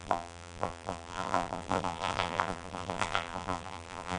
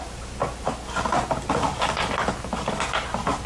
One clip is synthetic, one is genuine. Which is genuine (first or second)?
second